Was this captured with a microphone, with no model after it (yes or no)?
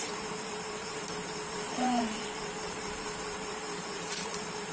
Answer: no